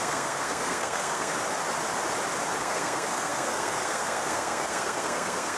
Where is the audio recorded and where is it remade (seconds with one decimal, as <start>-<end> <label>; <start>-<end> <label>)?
0.0-1.3 remade; 1.3-2.6 recorded; 2.6-5.6 remade